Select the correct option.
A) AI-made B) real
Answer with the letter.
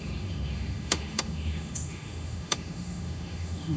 A